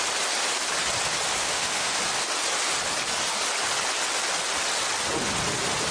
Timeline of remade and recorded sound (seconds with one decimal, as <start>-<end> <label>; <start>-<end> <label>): 0.0-1.4 recorded; 1.4-2.0 remade; 2.0-5.9 recorded

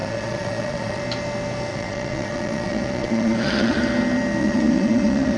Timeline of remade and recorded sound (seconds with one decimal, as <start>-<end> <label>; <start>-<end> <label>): 0.0-1.0 remade; 1.0-1.7 recorded; 1.7-3.8 remade; 3.8-4.4 recorded; 4.4-5.4 remade

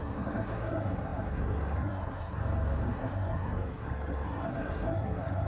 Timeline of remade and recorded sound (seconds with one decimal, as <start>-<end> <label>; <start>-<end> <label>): 0.0-2.4 remade; 2.4-2.9 recorded; 2.9-5.5 remade

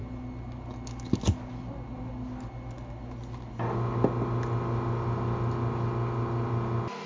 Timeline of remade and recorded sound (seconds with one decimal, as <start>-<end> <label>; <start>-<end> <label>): 0.0-7.1 recorded

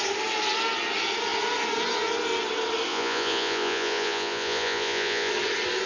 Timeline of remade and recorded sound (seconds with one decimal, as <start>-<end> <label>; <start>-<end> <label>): 0.0-2.9 recorded; 2.9-5.3 remade; 5.3-5.9 recorded

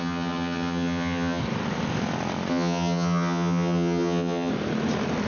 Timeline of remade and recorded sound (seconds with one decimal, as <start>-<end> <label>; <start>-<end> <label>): 0.0-1.4 remade; 1.4-2.5 recorded; 2.5-4.5 remade; 4.5-5.3 recorded

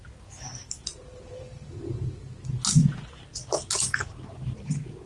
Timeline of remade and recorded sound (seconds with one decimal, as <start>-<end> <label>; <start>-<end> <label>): 0.0-0.9 recorded; 0.9-2.4 remade; 2.4-5.1 recorded